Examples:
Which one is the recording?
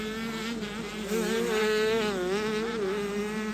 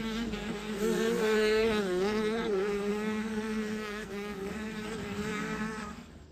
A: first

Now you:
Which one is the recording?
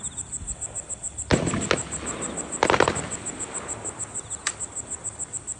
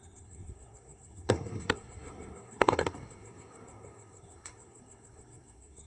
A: first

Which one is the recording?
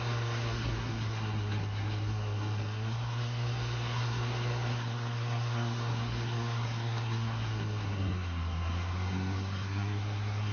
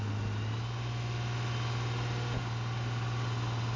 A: second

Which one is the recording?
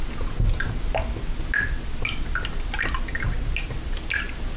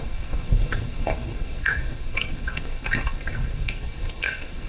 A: first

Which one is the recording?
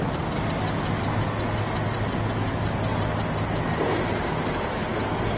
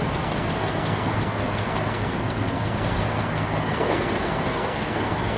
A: first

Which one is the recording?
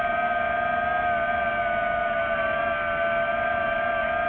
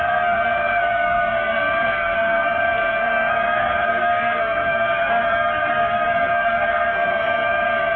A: first